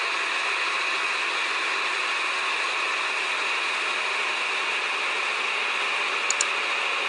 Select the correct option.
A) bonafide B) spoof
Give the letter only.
A